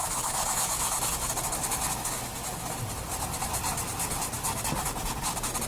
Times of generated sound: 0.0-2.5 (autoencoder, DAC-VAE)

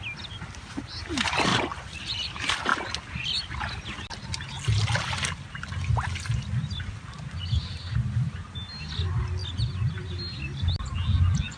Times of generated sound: none